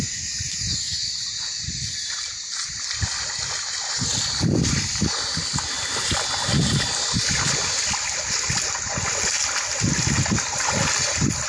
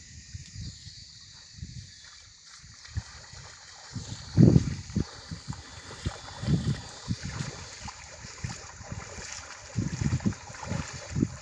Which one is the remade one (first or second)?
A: second